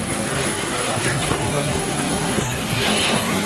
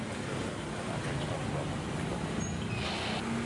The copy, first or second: first